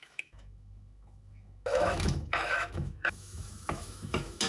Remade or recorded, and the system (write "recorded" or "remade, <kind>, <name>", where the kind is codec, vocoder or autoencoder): remade, autoencoder, DAC-VAE